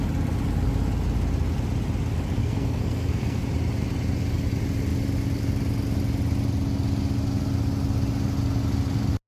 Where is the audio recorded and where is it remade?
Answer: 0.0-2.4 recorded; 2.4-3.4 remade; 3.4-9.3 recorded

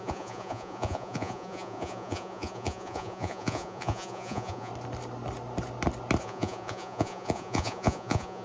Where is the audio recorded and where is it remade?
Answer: 0.0-4.7 remade; 4.7-6.2 recorded; 6.2-8.4 remade

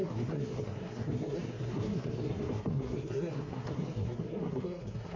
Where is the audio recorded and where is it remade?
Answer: 0.0-5.2 remade

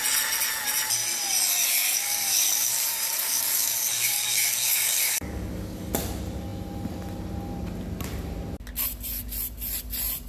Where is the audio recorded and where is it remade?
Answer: 0.0-1.6 recorded; 1.6-5.9 remade; 5.9-10.3 recorded

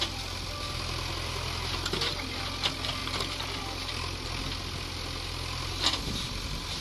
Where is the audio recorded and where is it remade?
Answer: 0.0-6.8 recorded